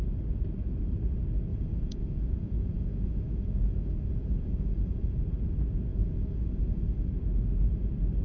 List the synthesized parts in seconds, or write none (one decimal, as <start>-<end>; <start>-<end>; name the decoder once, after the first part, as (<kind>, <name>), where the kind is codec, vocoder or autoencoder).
1.5-5.2 (vocoder, Vocos); 5.9-7.1